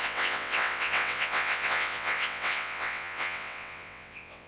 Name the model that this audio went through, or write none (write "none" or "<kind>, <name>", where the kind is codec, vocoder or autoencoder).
vocoder, WaveNeXt